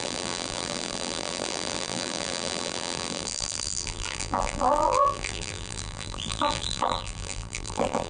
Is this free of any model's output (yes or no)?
no